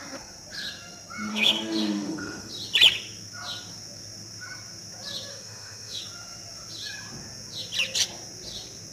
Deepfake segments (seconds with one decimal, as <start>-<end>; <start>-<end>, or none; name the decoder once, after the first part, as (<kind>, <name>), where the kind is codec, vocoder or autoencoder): 1.3-2.5 (autoencoder, DAC-VAE); 5.3-6.0